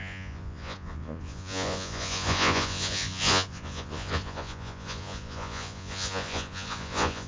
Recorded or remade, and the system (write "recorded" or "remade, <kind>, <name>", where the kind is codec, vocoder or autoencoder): remade, vocoder, Vocos